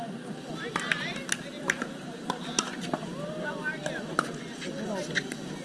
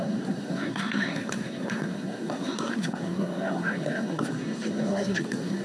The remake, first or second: second